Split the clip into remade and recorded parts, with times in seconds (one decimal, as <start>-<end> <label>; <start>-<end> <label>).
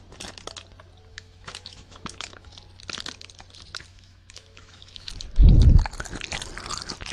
0.0-1.1 recorded; 1.1-2.5 remade; 2.5-3.9 recorded; 3.9-5.1 remade; 5.1-7.1 recorded